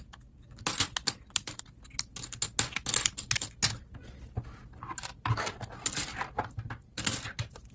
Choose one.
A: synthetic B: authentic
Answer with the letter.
B